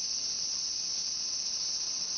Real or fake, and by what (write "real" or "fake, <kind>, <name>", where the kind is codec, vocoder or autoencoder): real